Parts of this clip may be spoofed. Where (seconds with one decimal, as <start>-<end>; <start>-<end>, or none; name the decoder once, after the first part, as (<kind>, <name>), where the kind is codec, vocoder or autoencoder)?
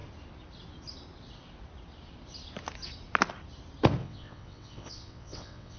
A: 4.0-5.8 (vocoder, WaveNeXt)